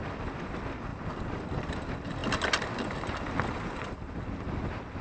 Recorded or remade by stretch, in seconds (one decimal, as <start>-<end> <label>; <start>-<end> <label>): 0.0-5.0 recorded